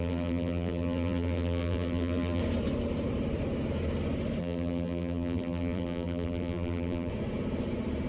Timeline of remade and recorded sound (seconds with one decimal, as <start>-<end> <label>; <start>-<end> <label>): 0.0-2.4 remade; 2.4-4.4 recorded; 4.4-7.1 remade; 7.1-8.1 recorded